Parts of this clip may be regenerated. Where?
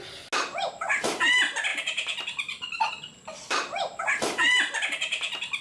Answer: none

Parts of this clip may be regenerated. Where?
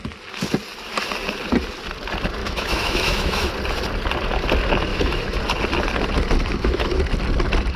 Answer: 2.4-3.5 (autoencoder, DAC-VAE); 4.9-5.4; 6.5-7.0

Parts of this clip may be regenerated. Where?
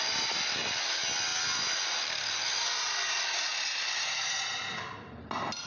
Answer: none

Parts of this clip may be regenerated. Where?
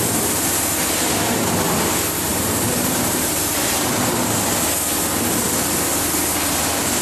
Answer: 2.3-4.0 (vocoder, BigVGAN v2)